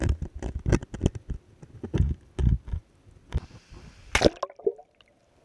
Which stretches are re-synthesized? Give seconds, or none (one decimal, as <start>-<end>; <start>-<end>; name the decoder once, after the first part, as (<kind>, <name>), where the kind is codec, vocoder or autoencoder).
none